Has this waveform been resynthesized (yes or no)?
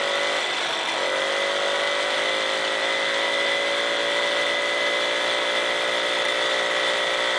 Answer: no